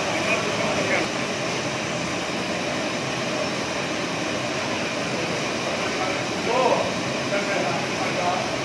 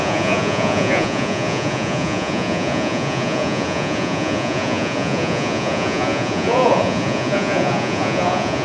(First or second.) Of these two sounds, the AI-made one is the second